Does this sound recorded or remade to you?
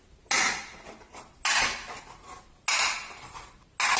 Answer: recorded